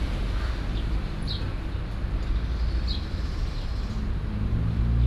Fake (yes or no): no